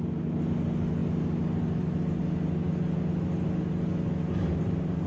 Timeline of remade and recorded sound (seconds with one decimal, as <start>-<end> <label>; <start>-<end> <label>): 0.0-5.1 recorded

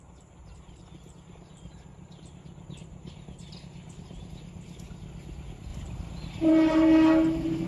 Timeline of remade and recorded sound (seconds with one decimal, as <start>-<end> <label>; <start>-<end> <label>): 0.0-1.9 recorded; 1.9-4.3 remade; 4.3-5.7 recorded; 5.7-6.5 remade; 6.5-7.7 recorded

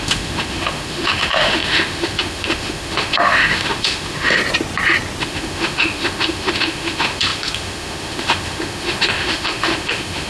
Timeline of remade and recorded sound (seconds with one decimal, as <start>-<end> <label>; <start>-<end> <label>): 0.0-4.4 remade; 4.4-5.2 recorded; 5.2-10.3 remade

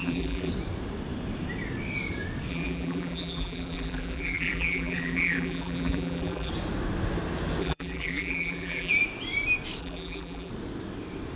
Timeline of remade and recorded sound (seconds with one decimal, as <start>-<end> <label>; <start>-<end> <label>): 0.0-0.5 remade; 0.5-2.5 recorded; 2.5-6.5 remade; 6.5-7.6 recorded; 7.6-8.9 remade; 8.9-9.8 recorded; 9.8-10.5 remade; 10.5-11.4 recorded

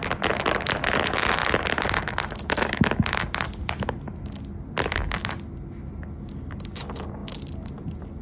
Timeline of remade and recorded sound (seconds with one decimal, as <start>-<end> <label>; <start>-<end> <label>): 0.0-8.2 recorded